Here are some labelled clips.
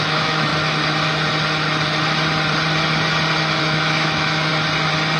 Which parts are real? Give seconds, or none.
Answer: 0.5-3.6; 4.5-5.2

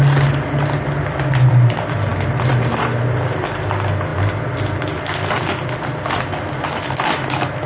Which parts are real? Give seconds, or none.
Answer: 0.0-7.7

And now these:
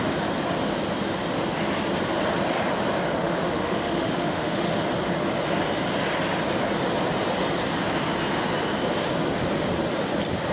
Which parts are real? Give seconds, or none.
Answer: 0.0-3.2; 4.8-10.5

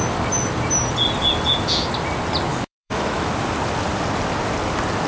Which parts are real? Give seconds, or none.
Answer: 0.0-2.5; 3.3-5.1